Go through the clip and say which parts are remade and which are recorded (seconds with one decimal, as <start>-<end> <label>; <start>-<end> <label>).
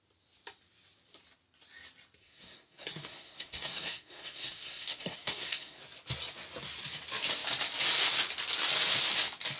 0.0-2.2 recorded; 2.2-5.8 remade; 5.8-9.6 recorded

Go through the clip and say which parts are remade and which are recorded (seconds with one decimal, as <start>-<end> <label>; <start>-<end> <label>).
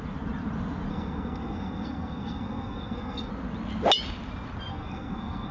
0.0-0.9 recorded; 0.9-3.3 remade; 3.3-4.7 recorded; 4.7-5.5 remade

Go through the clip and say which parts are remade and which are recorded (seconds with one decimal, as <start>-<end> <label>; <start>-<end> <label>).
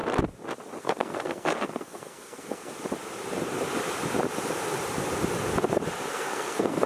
0.0-0.8 recorded; 0.8-2.7 remade; 2.7-6.1 recorded; 6.1-6.9 remade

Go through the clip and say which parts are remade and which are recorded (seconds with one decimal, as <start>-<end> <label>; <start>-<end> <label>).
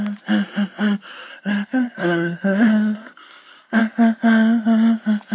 0.0-1.3 recorded; 1.3-3.8 remade; 3.8-5.3 recorded